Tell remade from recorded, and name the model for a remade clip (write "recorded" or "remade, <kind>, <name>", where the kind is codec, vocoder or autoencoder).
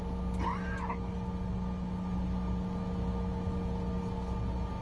recorded